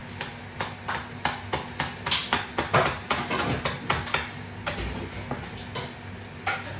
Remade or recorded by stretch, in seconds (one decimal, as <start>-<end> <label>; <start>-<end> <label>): 0.0-6.8 recorded